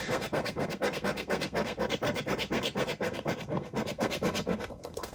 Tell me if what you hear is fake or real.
fake